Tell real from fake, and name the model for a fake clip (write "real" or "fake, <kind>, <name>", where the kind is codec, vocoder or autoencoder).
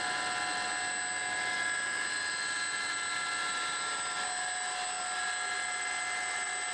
real